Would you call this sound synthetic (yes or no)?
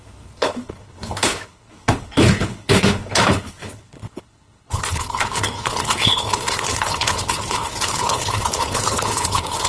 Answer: yes